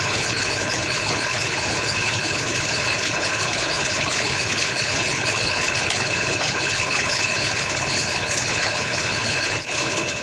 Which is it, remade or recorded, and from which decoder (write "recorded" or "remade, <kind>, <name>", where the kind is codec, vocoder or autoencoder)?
remade, codec, HILCodec